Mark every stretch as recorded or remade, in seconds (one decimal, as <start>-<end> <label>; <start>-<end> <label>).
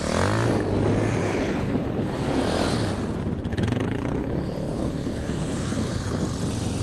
0.0-1.2 recorded; 1.2-2.4 remade; 2.4-3.5 recorded; 3.5-6.2 remade; 6.2-6.8 recorded